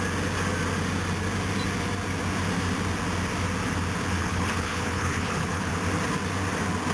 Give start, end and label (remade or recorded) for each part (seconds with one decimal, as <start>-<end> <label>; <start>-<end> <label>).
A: 0.0-4.2 recorded; 4.2-5.7 remade; 5.7-6.9 recorded